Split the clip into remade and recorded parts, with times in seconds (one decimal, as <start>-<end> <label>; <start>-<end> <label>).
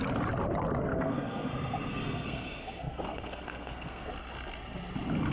0.0-0.9 recorded; 0.9-1.5 remade; 1.5-1.9 recorded; 1.9-4.1 remade; 4.1-5.3 recorded